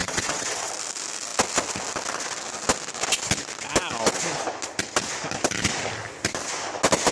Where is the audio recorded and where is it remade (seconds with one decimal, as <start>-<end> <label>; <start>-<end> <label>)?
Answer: 0.0-0.7 remade; 0.7-7.1 recorded